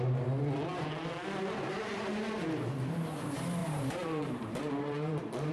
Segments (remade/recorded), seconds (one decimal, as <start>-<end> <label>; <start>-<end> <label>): 0.0-0.7 recorded; 0.7-2.0 remade; 2.0-3.6 recorded; 3.6-5.5 remade